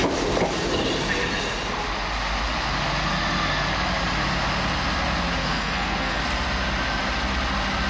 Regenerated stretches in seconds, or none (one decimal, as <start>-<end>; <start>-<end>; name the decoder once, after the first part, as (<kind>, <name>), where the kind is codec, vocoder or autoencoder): 5.4-6.2 (codec, SNAC)